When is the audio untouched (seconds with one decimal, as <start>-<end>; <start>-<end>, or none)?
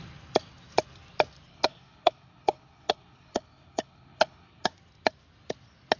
0.0-1.5; 4.7-6.0